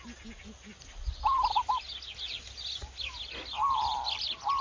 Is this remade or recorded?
recorded